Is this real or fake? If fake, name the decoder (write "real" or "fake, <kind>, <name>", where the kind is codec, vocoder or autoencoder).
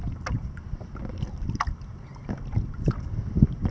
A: real